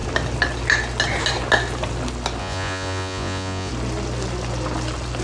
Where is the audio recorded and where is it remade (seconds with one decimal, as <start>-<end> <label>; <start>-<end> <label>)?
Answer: 0.0-2.4 recorded; 2.4-3.7 remade; 3.7-5.2 recorded